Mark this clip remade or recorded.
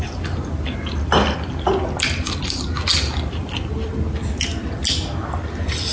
recorded